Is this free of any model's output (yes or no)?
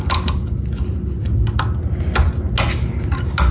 yes